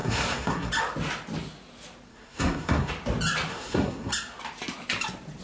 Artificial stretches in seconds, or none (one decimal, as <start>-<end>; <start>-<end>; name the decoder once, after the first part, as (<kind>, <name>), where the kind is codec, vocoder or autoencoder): 0.0-0.7 (codec, SNAC); 2.1-2.9; 3.5-4.1